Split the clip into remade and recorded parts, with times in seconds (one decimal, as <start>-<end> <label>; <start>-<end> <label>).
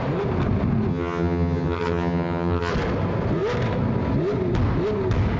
0.0-0.9 recorded; 0.9-2.7 remade; 2.7-5.4 recorded